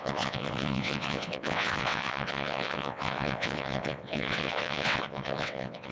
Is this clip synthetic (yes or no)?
yes